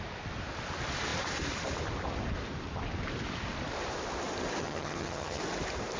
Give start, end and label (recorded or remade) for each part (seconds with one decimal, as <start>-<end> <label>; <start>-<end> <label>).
0.0-4.6 recorded; 4.6-5.4 remade; 5.4-6.0 recorded